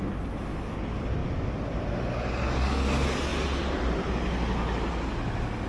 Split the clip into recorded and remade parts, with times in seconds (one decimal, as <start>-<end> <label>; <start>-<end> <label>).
0.0-1.2 recorded; 1.2-1.9 remade; 1.9-5.7 recorded